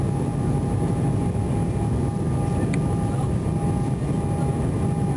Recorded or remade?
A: recorded